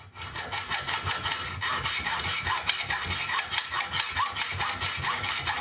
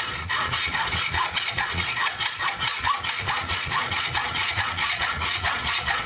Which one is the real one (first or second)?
first